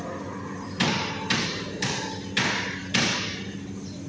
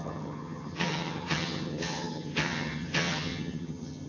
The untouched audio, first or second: first